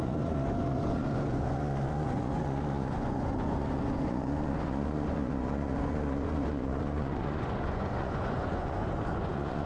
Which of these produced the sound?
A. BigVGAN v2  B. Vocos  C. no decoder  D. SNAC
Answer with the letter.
B